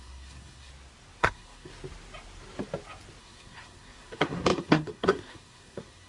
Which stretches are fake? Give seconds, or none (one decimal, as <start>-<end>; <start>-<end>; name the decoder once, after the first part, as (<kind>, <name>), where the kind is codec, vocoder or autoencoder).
0.0-0.7 (codec, SNAC); 1.2-1.7; 3.2-6.1